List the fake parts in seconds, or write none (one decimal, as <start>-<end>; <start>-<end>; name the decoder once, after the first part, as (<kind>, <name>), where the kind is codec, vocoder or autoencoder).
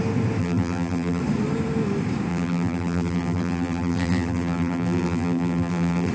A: 0.4-1.2 (vocoder, BigVGAN v2); 2.3-6.1